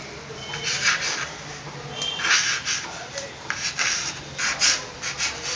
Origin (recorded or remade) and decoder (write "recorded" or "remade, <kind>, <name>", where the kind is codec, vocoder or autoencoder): recorded